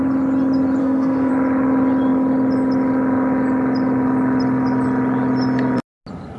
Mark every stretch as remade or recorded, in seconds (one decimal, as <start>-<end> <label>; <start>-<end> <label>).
0.0-0.8 recorded; 0.8-1.3 remade; 1.3-6.4 recorded